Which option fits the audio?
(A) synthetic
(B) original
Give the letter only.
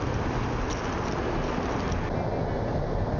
B